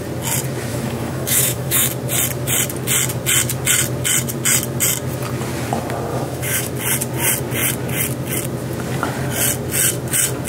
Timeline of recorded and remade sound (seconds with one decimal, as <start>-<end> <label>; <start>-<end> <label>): 0.0-0.7 recorded; 0.7-1.9 remade; 1.9-6.1 recorded; 6.1-6.7 remade; 6.7-10.5 recorded